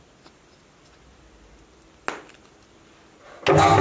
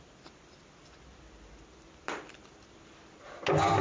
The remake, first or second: second